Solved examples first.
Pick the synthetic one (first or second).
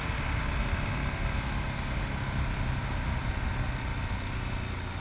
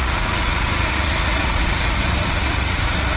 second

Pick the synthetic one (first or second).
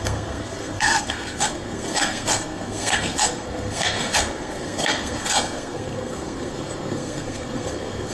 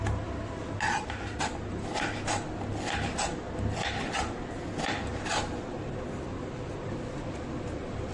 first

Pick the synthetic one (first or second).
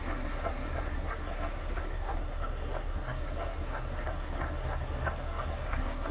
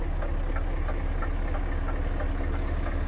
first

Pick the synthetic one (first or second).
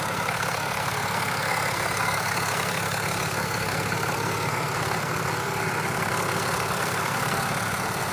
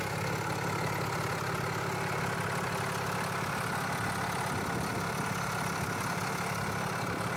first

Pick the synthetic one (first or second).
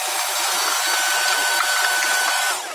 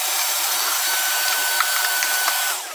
second